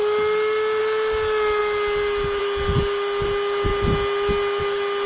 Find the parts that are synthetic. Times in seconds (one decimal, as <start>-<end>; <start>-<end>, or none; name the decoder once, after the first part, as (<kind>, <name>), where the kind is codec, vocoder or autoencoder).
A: none